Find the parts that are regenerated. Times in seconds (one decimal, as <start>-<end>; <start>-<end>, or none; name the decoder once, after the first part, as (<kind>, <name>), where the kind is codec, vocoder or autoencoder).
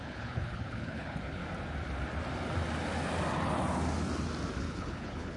0.0-1.4 (codec, HILCodec); 4.6-5.4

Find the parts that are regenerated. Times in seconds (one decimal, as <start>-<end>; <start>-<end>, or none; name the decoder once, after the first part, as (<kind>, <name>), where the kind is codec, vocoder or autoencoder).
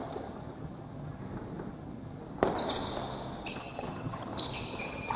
0.0-1.2 (vocoder, HiFi-GAN); 1.7-2.2; 3.6-4.3; 4.8-5.2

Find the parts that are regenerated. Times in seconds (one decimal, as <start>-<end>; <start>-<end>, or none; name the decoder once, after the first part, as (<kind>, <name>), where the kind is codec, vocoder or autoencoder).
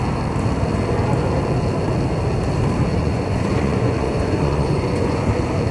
2.9-5.3 (vocoder, Vocos)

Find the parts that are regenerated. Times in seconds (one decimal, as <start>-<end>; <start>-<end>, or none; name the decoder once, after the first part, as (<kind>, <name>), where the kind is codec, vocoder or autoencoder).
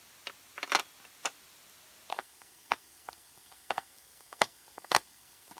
2.1-5.6 (codec, SNAC)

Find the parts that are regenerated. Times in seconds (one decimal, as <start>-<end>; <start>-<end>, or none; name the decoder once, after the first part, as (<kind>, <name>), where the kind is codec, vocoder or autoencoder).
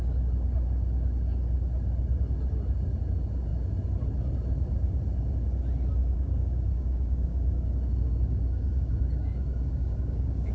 6.0-10.5 (codec, DAC)